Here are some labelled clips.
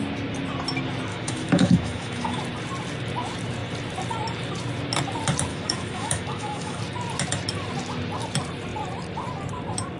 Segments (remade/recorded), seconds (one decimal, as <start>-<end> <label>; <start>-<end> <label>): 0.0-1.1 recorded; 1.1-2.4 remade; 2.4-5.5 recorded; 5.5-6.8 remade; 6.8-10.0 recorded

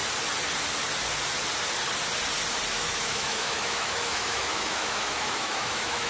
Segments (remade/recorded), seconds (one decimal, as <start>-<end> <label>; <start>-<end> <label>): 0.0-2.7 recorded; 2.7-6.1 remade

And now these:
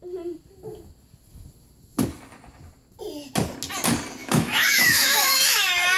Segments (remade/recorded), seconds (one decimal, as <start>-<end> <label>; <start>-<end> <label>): 0.0-4.2 recorded; 4.2-6.0 remade

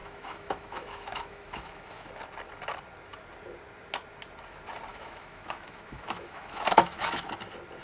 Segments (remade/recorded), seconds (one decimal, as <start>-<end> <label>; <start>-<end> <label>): 0.0-2.1 remade; 2.1-4.9 recorded; 4.9-7.3 remade; 7.3-7.8 recorded